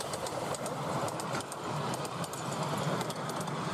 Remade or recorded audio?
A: recorded